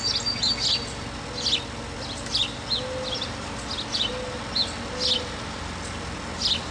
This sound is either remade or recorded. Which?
recorded